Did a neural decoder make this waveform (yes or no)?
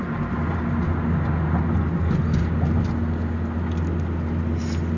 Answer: no